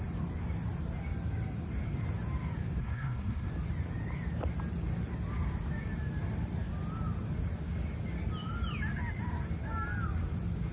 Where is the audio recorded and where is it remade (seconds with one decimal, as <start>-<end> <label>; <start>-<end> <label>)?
0.0-2.8 recorded; 2.8-3.5 remade; 3.5-10.7 recorded